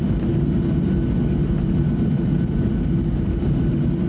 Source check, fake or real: real